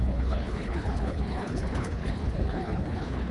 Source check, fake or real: fake